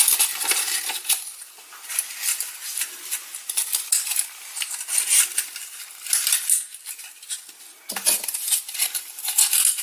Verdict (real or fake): real